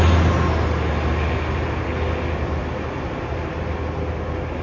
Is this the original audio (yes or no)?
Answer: yes